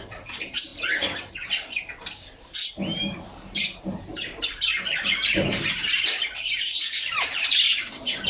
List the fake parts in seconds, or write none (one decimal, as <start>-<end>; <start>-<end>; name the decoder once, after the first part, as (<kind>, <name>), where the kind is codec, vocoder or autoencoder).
0.0-0.7 (vocoder, BigVGAN v2); 2.7-8.3